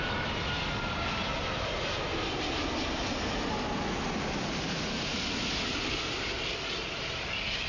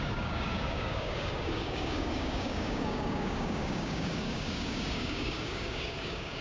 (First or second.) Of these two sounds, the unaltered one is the first